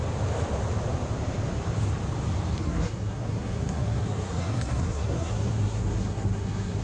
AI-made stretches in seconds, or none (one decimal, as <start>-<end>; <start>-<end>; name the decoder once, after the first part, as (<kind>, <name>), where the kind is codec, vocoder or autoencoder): 2.6-6.8 (codec, SNAC)